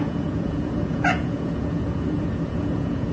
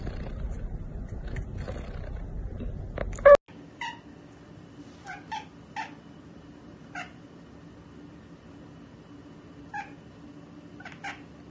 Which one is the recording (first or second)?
second